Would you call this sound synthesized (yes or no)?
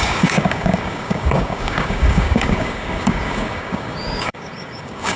yes